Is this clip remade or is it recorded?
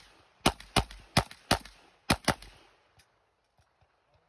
recorded